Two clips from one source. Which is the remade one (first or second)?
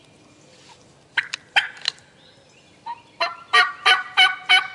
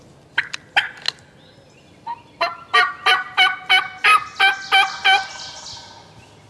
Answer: first